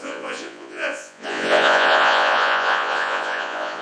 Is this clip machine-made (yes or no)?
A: yes